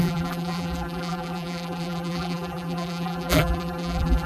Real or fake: fake